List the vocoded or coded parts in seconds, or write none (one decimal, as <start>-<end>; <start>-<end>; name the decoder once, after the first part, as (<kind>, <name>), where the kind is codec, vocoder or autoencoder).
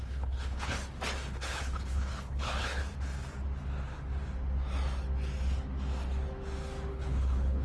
0.0-0.8 (codec, HILCodec); 1.3-2.8; 6.9-7.6